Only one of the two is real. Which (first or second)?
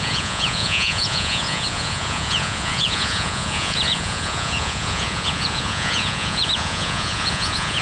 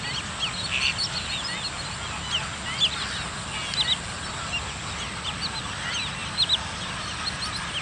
second